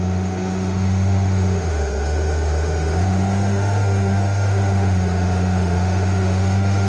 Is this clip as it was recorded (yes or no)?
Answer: no